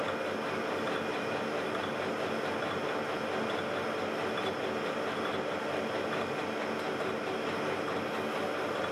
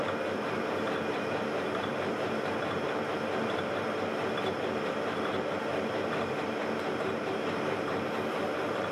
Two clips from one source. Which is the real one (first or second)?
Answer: first